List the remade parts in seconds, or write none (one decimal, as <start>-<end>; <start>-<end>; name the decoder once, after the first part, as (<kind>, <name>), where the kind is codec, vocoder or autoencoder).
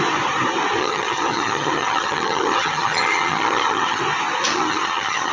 0.8-4.0 (vocoder, HiFi-GAN); 4.5-5.3